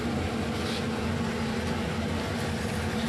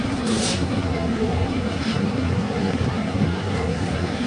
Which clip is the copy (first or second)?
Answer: second